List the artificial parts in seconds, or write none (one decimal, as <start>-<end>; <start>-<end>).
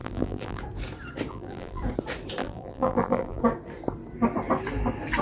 0.0-0.6; 1.3-1.8; 2.4-3.4